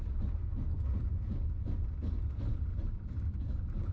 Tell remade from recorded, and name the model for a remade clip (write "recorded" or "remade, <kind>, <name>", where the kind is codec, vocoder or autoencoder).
recorded